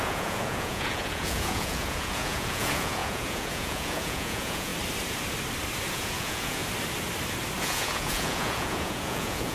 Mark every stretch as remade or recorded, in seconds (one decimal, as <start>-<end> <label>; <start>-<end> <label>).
0.0-4.7 remade; 4.7-5.9 recorded; 5.9-6.6 remade; 6.6-7.6 recorded; 7.6-9.5 remade